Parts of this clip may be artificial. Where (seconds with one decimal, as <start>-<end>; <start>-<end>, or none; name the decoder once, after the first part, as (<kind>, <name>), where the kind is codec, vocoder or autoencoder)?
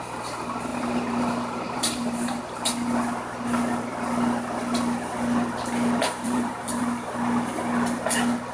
0.7-2.4 (vocoder, BigVGAN v2); 6.0-6.8